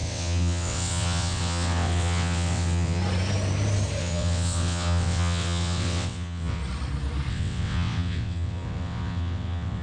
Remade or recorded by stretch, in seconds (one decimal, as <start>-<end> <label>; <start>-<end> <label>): 0.0-3.0 remade; 3.0-4.0 recorded; 4.0-6.6 remade; 6.6-7.3 recorded; 7.3-9.8 remade

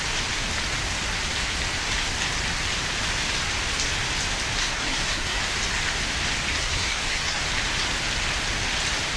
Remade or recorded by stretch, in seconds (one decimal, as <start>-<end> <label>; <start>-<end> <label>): 0.0-4.6 recorded; 4.6-5.4 remade; 5.4-6.6 recorded; 6.6-7.4 remade; 7.4-9.2 recorded

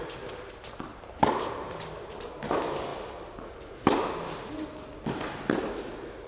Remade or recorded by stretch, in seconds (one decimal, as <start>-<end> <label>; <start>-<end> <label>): 0.0-0.9 recorded; 0.9-2.3 remade; 2.3-6.3 recorded

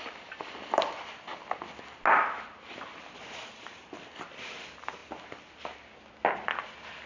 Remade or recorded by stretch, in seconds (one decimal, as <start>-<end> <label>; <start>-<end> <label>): 0.0-7.1 recorded

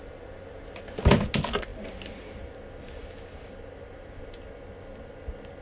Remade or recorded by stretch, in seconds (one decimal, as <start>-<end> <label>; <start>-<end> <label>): 0.0-3.0 recorded; 3.0-4.2 remade; 4.2-5.6 recorded